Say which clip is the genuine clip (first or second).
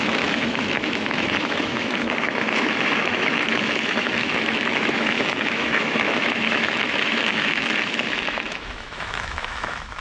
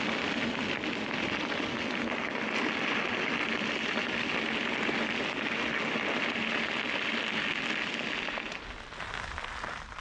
second